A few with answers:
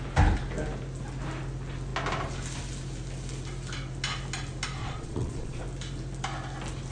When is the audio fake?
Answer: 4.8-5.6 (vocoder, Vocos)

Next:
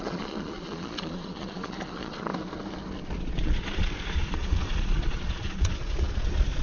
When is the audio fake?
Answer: 0.0-2.3 (vocoder, Vocos); 3.2-6.6

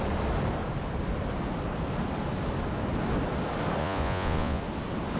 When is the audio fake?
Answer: 3.8-4.6 (vocoder, Vocos)

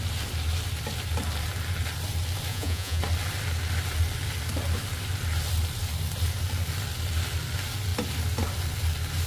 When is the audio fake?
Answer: 2.5-3.0 (vocoder, Vocos)

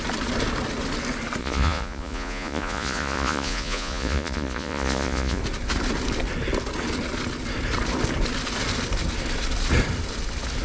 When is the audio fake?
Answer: 1.4-5.4 (vocoder, Vocos)

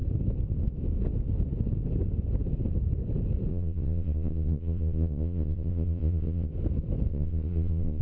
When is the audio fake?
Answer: 3.5-6.5 (vocoder, Vocos); 7.1-8.0

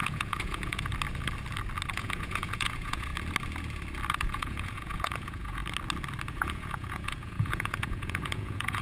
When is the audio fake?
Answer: 0.0-0.9 (vocoder, Vocos); 1.9-3.1; 4.1-5.6; 6.3-8.8